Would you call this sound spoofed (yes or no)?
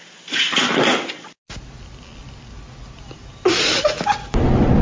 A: no